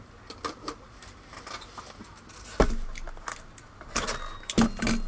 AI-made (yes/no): no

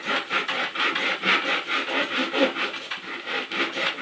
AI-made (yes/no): no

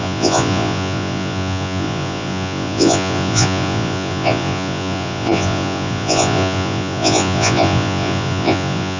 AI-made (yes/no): yes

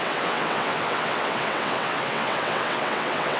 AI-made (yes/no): yes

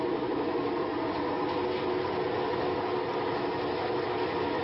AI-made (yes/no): no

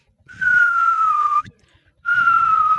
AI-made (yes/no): yes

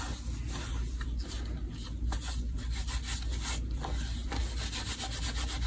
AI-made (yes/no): no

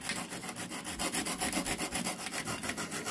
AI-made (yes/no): no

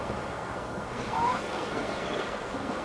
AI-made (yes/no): yes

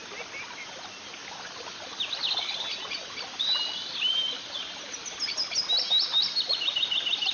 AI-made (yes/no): no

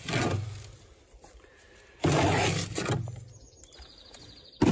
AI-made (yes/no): yes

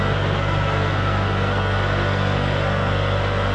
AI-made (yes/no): yes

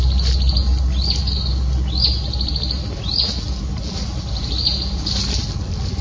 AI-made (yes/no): no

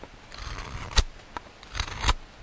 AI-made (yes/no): no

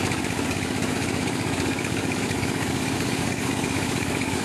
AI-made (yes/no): yes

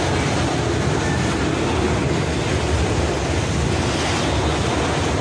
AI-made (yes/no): no